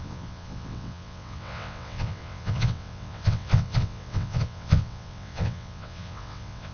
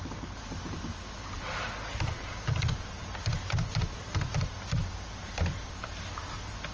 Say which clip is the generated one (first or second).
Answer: first